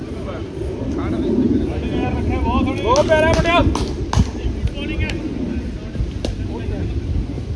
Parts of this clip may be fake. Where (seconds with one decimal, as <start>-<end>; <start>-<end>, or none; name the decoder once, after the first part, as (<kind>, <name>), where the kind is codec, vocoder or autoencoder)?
none